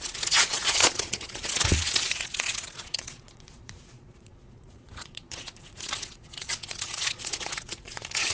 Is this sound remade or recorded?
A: remade